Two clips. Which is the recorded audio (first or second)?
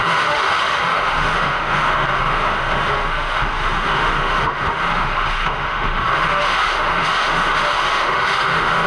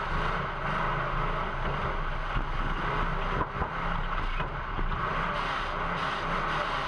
second